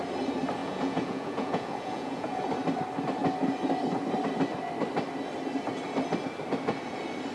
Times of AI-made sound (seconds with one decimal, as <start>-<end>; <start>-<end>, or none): 0.6-2.4